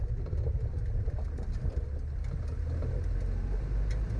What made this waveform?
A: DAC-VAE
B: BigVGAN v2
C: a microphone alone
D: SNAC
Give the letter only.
C